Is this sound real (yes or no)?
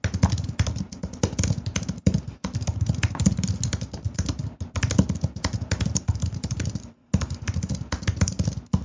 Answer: yes